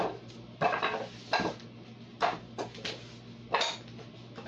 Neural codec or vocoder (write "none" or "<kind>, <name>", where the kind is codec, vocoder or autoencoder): none